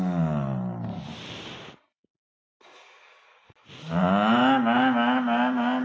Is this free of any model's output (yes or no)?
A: yes